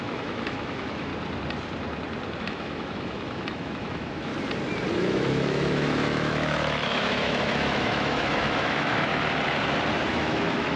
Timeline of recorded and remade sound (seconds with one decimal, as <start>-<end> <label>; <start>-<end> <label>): 0.0-1.1 remade; 1.1-2.4 recorded; 2.4-4.3 remade; 4.3-4.9 recorded; 4.9-9.1 remade; 9.1-10.1 recorded; 10.1-10.8 remade